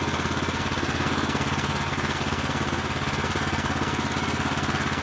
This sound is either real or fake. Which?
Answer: fake